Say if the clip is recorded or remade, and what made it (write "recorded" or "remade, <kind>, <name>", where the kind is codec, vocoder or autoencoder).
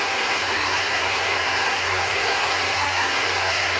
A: remade, codec, SNAC